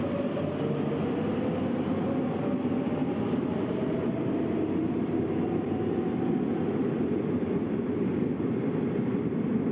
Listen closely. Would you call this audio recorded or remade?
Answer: recorded